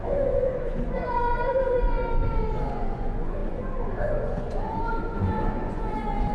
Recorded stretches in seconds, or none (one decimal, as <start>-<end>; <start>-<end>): 2.0-2.7